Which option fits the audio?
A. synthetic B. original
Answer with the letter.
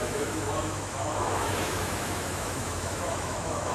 A